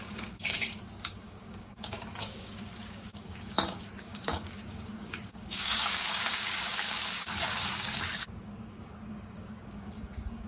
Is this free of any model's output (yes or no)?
no